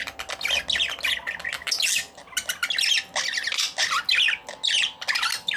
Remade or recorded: recorded